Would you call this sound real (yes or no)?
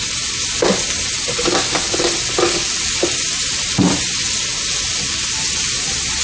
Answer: yes